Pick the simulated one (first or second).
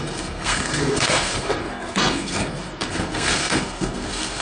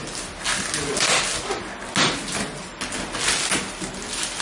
first